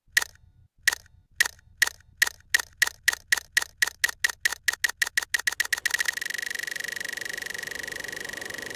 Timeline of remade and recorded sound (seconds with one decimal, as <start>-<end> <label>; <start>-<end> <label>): 0.0-8.8 recorded